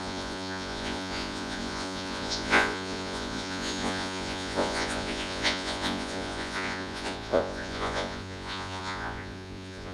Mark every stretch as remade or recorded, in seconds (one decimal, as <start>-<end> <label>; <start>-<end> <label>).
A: 0.0-9.9 remade